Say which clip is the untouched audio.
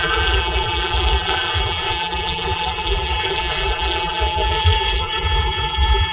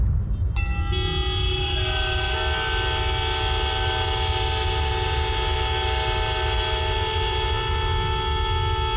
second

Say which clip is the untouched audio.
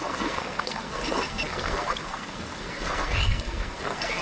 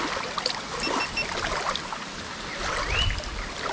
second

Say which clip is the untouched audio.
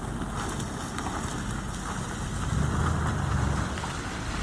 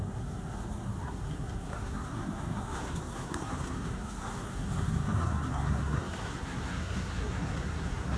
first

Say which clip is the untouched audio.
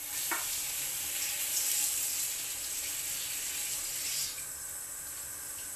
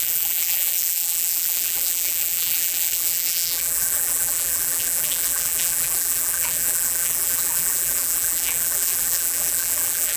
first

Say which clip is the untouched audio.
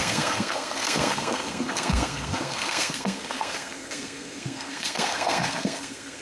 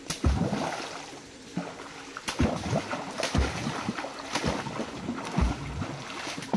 second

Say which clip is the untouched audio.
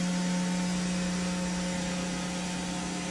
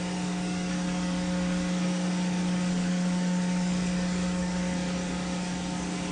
first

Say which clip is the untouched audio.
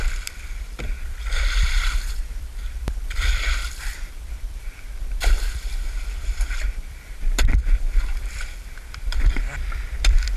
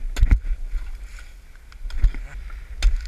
second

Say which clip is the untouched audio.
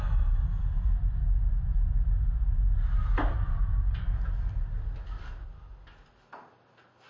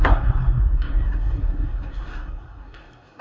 first